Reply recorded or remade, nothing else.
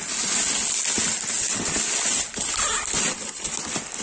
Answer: recorded